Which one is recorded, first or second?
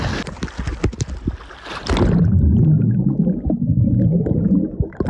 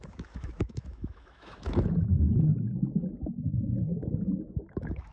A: first